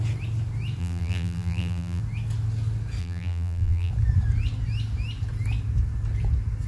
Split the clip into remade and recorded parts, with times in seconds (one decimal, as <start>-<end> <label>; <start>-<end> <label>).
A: 0.0-0.8 recorded; 0.8-2.0 remade; 2.0-3.0 recorded; 3.0-3.9 remade; 3.9-6.7 recorded